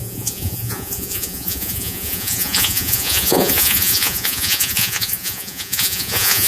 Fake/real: fake